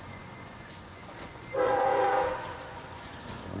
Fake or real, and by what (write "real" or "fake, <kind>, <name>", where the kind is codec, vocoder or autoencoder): fake, vocoder, Vocos